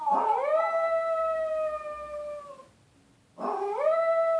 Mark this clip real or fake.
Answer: real